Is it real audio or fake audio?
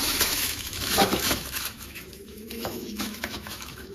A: fake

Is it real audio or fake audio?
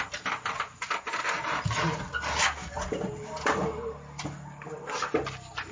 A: real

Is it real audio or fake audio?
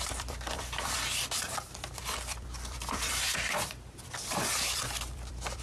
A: fake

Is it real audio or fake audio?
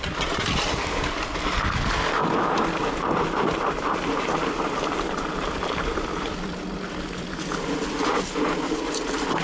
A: real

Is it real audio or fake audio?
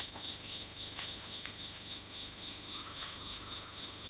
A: fake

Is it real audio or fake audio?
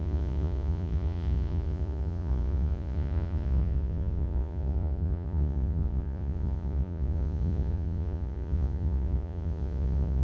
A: fake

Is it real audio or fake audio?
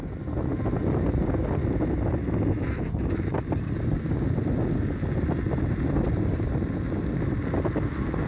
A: real